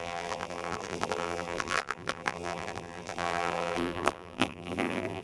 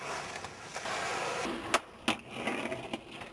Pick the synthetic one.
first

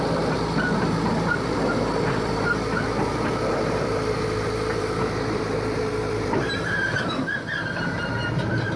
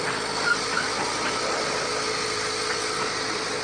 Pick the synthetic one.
first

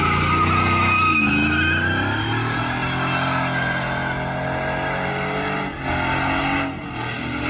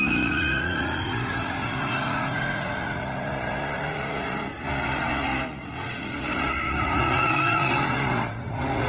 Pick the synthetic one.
second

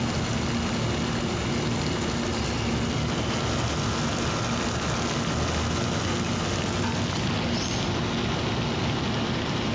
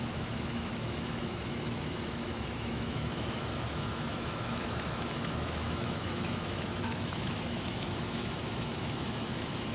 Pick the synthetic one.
second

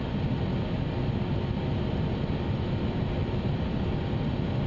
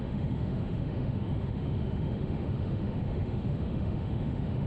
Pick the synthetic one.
second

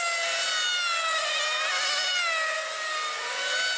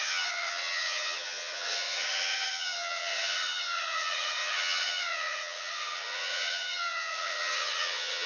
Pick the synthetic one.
second